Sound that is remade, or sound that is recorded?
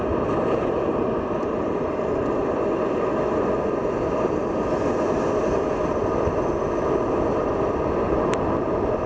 recorded